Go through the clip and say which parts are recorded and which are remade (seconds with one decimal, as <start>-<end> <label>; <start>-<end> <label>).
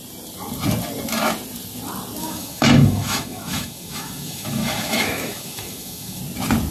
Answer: 0.0-2.2 recorded; 2.2-6.2 remade; 6.2-6.7 recorded